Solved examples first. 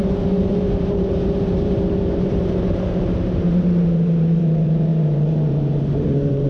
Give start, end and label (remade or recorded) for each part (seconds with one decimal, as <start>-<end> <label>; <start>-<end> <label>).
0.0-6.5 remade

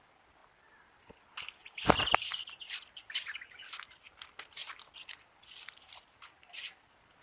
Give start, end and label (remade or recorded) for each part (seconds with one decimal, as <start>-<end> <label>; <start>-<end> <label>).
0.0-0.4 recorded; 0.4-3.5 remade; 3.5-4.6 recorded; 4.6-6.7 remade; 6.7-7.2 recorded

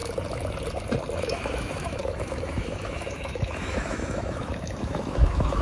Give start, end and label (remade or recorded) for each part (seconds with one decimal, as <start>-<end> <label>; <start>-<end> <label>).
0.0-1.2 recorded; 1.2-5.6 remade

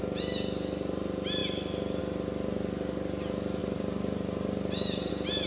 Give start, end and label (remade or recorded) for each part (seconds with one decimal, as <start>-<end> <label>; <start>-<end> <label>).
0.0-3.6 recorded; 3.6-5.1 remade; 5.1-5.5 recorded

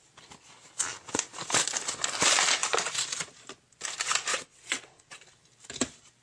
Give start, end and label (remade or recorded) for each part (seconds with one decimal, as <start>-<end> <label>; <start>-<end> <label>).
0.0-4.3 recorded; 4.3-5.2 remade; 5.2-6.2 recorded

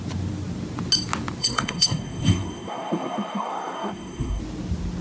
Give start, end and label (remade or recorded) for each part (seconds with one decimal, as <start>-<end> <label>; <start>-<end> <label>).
0.0-1.4 recorded; 1.4-4.4 remade; 4.4-5.0 recorded

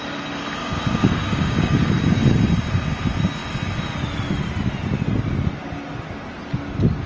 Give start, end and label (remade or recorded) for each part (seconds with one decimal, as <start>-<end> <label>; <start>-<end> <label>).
0.0-0.6 recorded; 0.6-1.9 remade; 1.9-7.1 recorded